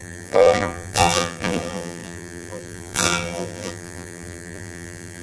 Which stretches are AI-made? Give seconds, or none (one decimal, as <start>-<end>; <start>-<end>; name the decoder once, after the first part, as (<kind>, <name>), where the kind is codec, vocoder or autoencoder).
0.0-5.2 (vocoder, BigVGAN v2)